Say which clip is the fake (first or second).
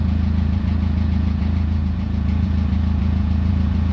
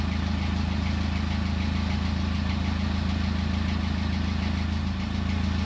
first